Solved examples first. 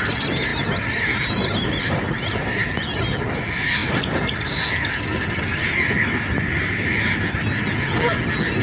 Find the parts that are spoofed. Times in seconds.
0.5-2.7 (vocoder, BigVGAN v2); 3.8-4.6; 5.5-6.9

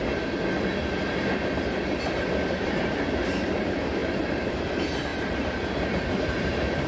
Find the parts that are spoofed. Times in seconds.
2.5-4.0 (vocoder, BigVGAN v2); 4.5-6.9

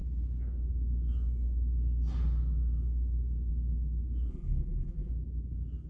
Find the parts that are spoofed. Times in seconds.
4.3-5.1 (vocoder, BigVGAN v2)